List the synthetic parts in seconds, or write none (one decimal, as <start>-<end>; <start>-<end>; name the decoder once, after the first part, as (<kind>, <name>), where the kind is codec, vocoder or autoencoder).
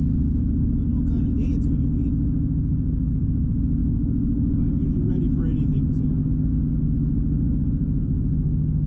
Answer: none